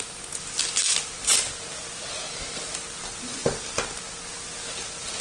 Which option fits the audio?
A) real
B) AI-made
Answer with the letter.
A